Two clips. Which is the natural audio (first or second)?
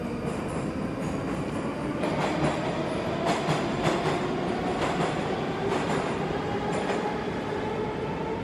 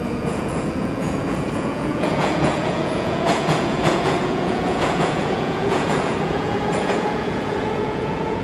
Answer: first